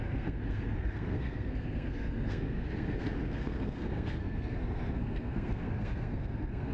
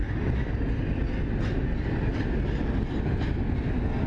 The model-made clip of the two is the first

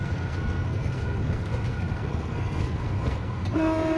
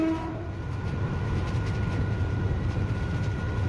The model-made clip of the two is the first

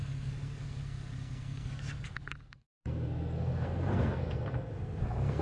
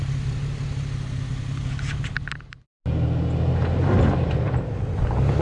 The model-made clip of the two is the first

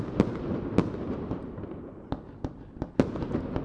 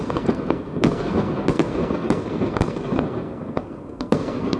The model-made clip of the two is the second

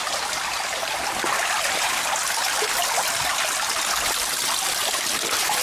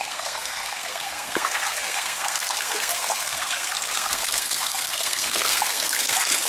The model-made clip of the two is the second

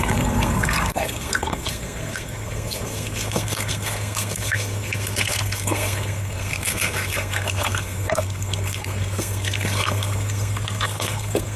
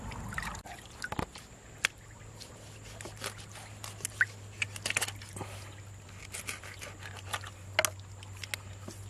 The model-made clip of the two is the first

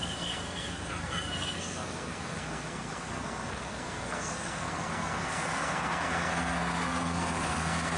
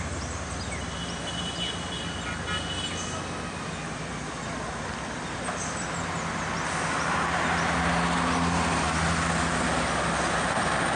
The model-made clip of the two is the first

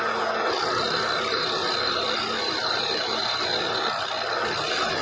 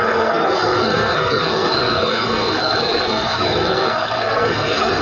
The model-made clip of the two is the second